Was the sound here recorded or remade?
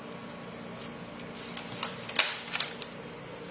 recorded